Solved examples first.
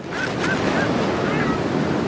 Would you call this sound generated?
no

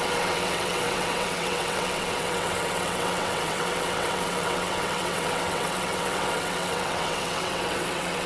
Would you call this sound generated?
yes